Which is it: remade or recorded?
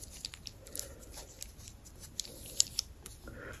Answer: remade